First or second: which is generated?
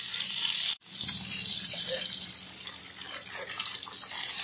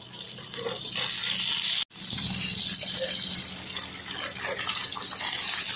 first